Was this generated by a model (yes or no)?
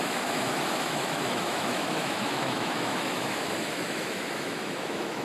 yes